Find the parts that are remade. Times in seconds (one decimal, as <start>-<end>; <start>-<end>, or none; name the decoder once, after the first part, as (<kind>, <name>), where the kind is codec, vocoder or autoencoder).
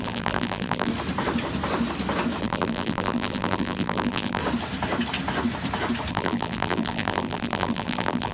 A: 0.0-0.9 (vocoder, BigVGAN v2); 2.4-4.4; 6.1-8.3